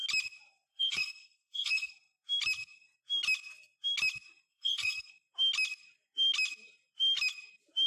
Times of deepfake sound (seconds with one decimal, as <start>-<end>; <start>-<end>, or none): 0.7-1.9; 4.5-5.1